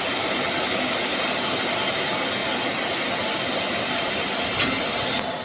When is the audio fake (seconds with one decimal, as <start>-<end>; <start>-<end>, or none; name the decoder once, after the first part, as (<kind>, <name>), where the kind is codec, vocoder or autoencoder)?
none